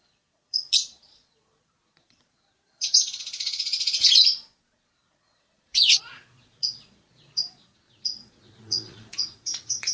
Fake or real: fake